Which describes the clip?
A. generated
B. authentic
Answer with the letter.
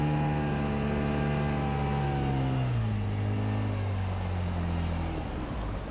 B